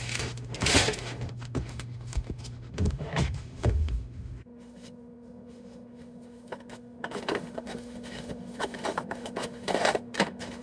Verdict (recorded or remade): remade